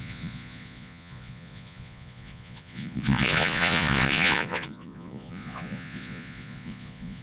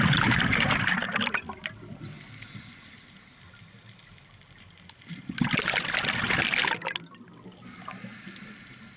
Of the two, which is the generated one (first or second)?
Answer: first